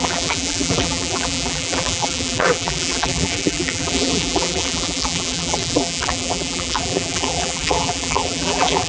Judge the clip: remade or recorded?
remade